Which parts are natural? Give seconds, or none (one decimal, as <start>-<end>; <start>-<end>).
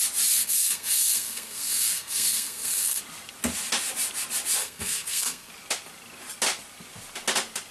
0.0-0.4; 3.0-4.6; 5.5-7.7